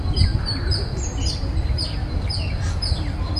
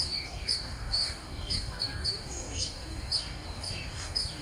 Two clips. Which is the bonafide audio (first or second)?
first